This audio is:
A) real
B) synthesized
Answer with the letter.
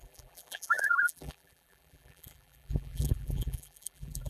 B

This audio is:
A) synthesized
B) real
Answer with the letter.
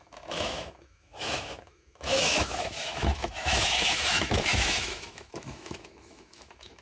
A